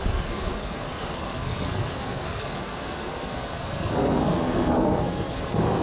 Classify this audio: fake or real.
fake